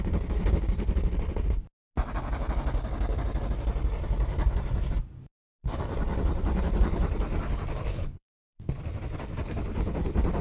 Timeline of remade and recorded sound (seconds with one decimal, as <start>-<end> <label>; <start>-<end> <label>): 0.0-7.9 recorded; 7.9-8.7 remade; 8.7-10.4 recorded

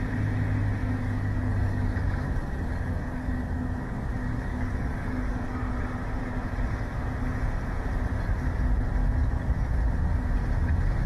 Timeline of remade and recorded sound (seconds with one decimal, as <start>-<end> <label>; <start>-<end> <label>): 0.0-0.8 recorded; 0.8-5.7 remade; 5.7-9.0 recorded; 9.0-9.7 remade; 9.7-11.1 recorded

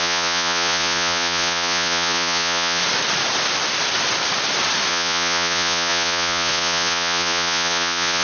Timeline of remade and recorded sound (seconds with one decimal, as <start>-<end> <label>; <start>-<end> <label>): 0.0-2.8 remade; 2.8-4.9 recorded; 4.9-8.2 remade

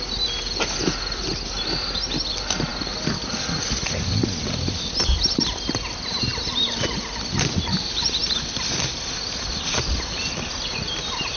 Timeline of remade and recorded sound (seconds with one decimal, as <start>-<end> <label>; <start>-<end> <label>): 0.0-11.4 recorded

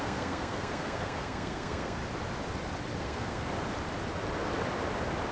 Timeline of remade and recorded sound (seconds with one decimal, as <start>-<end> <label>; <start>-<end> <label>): 0.0-2.0 remade; 2.0-3.0 recorded; 3.0-3.5 remade; 3.5-5.3 recorded

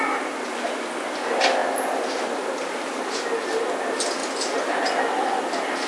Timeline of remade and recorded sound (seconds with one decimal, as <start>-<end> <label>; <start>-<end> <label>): 0.0-4.2 recorded; 4.2-4.7 remade; 4.7-5.9 recorded

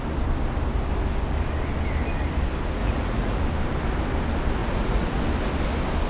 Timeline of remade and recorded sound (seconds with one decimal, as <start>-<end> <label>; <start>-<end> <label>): 0.0-2.8 recorded; 2.8-3.4 remade; 3.4-4.6 recorded; 4.6-5.2 remade; 5.2-6.1 recorded

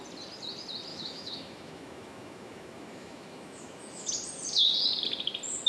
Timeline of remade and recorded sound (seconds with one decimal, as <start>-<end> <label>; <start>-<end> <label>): 0.0-0.9 recorded; 0.9-4.1 remade; 4.1-5.7 recorded